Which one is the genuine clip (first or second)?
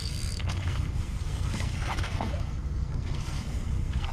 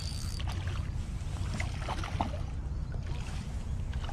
second